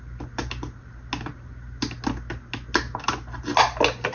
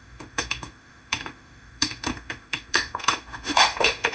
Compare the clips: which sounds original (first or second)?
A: first